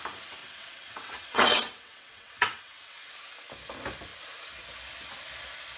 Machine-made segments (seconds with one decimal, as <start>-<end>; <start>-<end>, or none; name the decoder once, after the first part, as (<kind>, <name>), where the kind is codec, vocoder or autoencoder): 0.4-3.1 (vocoder, WaveNeXt)